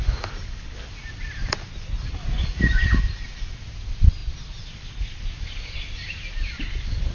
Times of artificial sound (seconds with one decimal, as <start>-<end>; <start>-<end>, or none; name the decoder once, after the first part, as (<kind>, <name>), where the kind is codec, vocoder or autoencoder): 2.4-3.0 (vocoder, Vocos)